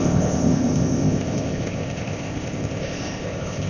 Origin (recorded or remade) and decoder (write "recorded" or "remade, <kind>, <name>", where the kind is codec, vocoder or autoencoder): remade, codec, ZipCodec